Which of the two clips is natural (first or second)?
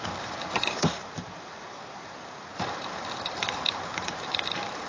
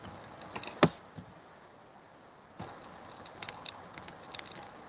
second